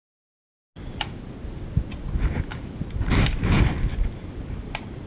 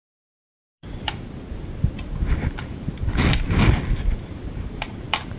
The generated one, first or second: second